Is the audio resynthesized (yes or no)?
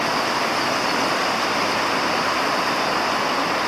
no